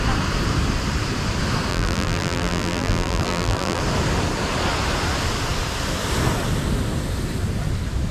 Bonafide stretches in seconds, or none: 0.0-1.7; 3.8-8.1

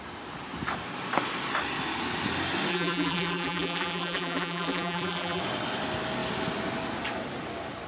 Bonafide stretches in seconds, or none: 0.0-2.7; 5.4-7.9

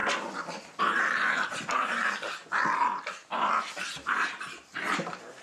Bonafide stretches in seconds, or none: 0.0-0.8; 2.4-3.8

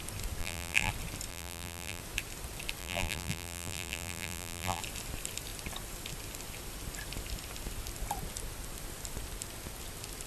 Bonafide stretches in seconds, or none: 0.0-0.4; 0.9-1.3; 2.0-2.8; 4.8-10.3